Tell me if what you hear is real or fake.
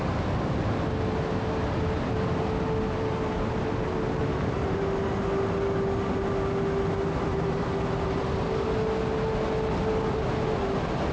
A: real